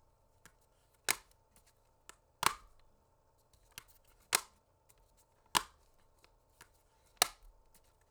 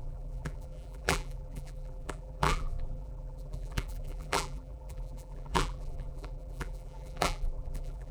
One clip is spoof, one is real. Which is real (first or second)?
first